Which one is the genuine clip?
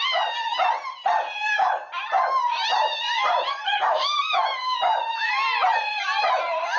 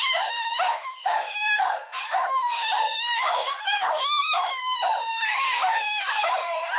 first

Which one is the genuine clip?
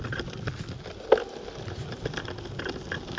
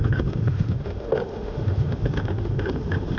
first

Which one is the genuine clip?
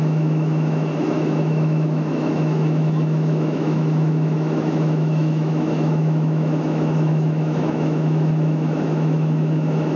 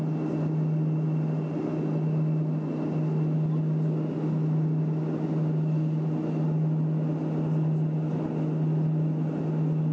second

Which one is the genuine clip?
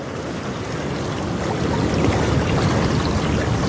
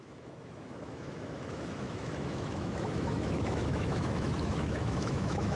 first